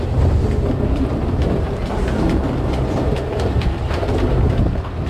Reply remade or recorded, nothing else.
recorded